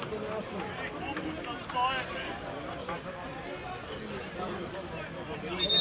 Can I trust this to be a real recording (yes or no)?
yes